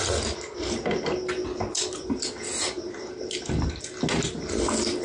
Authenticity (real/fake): real